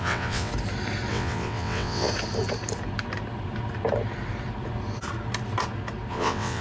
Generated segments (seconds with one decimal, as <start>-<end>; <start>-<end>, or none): 0.0-0.5; 1.1-2.1; 6.1-6.6